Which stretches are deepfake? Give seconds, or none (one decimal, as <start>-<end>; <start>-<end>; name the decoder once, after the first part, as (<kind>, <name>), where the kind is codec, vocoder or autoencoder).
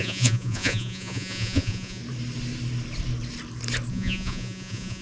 0.0-2.0 (vocoder, Vocos); 3.9-5.0